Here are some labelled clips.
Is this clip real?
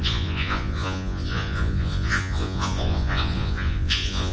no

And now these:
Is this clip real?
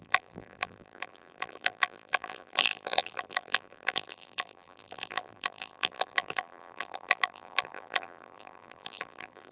no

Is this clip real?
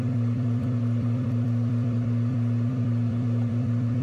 no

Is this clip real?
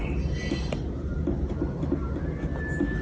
yes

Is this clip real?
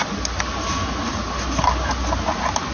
yes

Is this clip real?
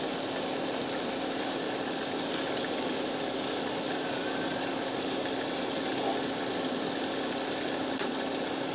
yes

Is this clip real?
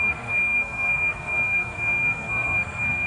no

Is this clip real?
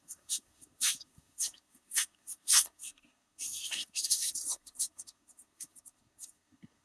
no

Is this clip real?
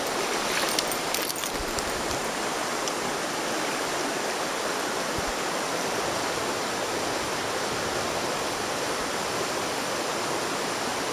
yes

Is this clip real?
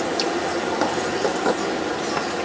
yes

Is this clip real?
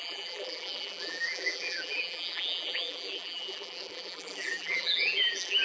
no